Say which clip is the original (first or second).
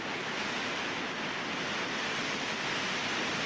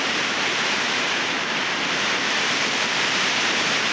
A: first